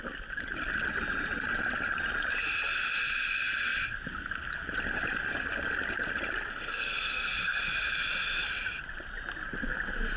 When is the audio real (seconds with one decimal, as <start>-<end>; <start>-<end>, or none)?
0.0-6.5; 7.3-10.2